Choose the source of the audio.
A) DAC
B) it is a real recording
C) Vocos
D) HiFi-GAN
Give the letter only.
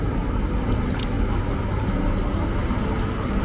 B